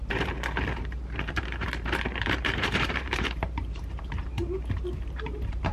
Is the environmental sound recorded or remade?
remade